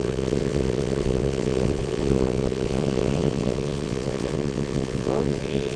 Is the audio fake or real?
fake